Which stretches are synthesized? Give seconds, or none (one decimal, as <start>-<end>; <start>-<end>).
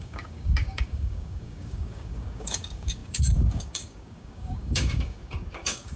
0.0-6.0